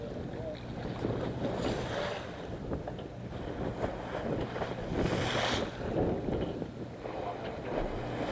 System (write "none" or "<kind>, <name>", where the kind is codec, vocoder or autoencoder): none